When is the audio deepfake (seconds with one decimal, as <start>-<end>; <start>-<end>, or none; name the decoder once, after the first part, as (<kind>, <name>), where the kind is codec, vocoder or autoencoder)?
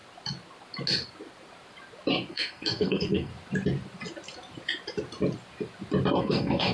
2.3-3.3 (codec, SNAC); 6.2-6.7